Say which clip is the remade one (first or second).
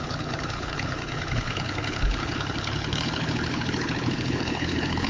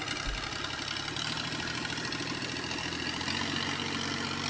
first